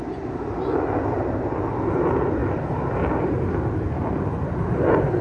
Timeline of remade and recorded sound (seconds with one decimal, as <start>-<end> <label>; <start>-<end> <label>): 0.0-5.2 recorded